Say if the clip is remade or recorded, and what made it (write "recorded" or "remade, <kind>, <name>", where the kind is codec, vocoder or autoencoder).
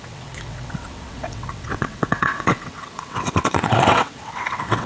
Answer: remade, vocoder, WaveNeXt